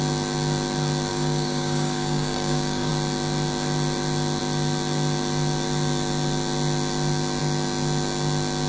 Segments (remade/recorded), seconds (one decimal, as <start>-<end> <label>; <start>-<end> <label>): 0.0-1.1 recorded; 1.1-2.9 remade; 2.9-8.7 recorded